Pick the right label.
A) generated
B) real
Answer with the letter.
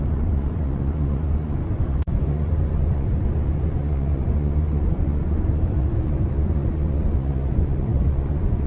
A